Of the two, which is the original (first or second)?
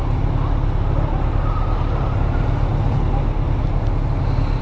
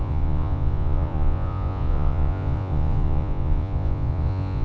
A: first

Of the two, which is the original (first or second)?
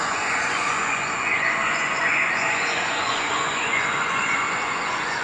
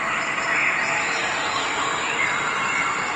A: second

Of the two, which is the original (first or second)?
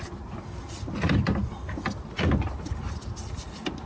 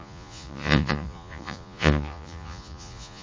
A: first